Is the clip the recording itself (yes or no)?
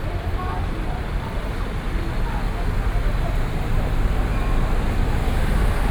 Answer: yes